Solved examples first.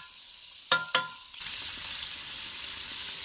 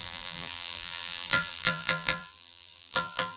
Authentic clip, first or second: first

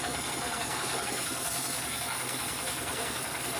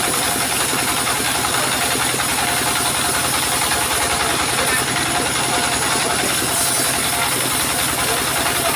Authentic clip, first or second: second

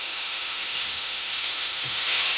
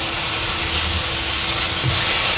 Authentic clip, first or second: second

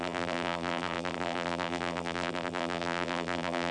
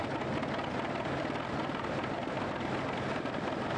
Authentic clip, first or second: second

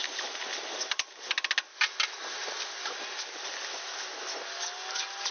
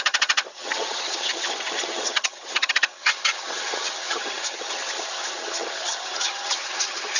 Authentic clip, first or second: first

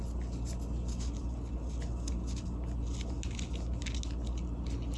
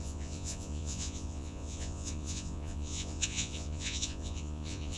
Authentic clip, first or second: first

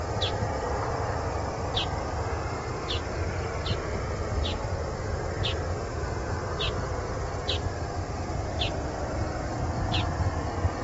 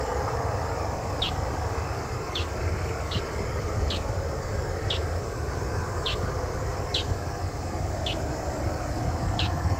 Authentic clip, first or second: first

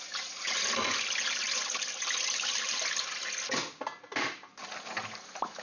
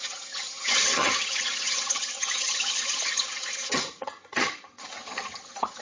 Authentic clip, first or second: first